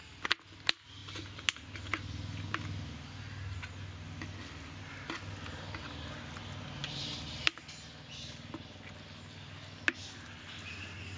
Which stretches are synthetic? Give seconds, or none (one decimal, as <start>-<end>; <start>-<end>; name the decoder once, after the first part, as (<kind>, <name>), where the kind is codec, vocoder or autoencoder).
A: none